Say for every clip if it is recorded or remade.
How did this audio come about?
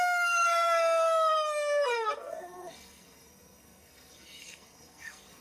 remade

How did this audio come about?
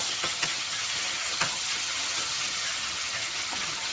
remade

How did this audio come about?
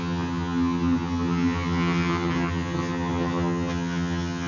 remade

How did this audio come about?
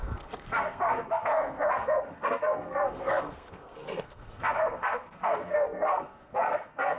remade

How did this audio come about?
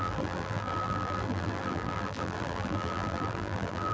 remade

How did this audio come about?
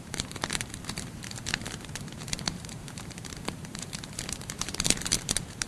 remade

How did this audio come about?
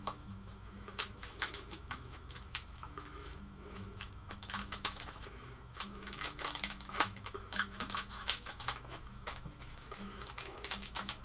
remade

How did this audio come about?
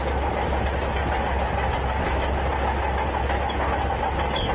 recorded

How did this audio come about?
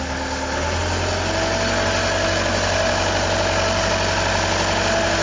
recorded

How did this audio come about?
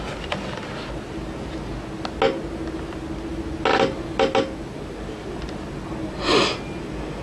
recorded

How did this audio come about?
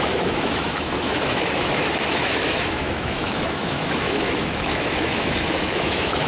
remade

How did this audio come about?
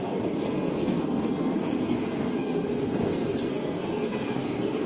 remade